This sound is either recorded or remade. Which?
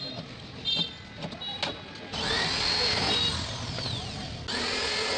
recorded